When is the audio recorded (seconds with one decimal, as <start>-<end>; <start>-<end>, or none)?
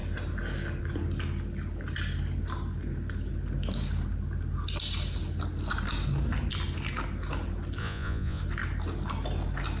0.0-7.8; 8.4-9.8